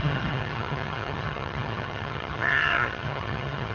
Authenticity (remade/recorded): remade